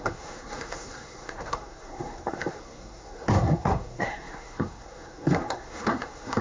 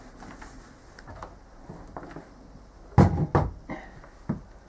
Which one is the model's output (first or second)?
first